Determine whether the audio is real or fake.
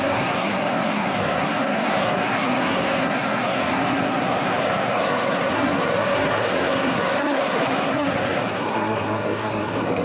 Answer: fake